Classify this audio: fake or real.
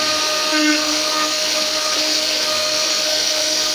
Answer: fake